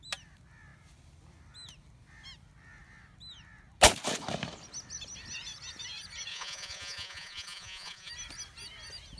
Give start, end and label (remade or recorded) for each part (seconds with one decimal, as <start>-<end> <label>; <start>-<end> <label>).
0.0-6.3 recorded; 6.3-8.1 remade; 8.1-9.2 recorded